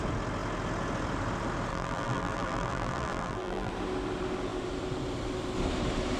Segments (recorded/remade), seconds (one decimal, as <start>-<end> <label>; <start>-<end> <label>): 0.0-1.7 recorded; 1.7-3.7 remade; 3.7-6.2 recorded